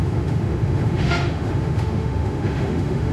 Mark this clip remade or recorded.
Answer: remade